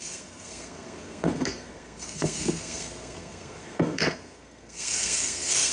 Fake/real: fake